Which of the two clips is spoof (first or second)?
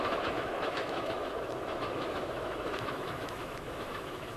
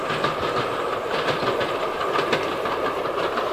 first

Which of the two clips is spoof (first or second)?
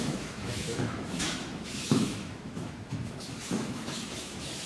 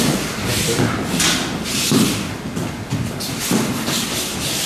first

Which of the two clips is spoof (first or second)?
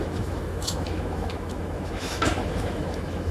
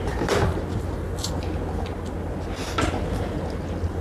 first